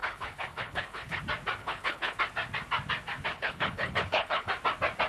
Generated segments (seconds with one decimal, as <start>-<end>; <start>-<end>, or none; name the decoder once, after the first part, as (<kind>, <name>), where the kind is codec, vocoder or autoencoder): 0.0-1.2 (codec, HILCodec); 1.6-2.2; 3.3-4.5